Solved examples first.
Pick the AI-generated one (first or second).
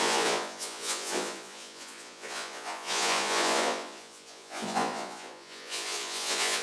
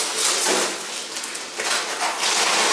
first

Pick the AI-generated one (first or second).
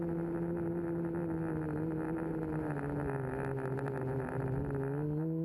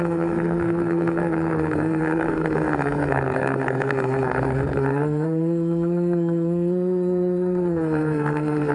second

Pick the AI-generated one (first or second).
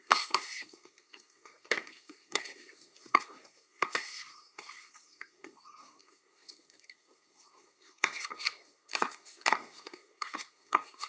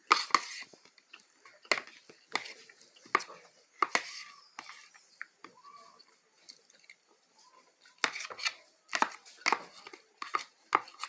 first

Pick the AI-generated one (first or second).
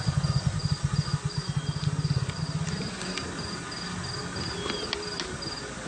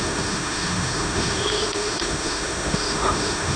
second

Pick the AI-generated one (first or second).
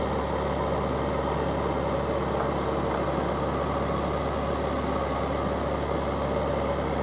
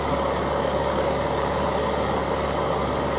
second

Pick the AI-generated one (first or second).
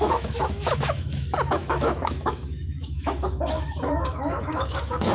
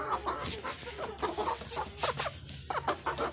first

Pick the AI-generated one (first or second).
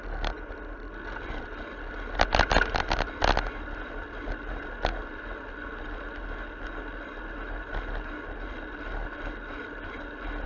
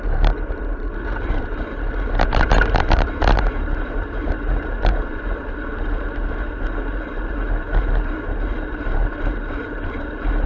second